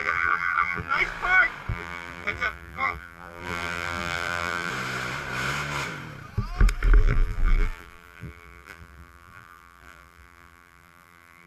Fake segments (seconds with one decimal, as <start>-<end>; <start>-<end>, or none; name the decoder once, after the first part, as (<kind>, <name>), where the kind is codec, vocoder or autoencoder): 0.0-1.0 (vocoder, BigVGAN v2); 1.7-4.7; 7.0-11.5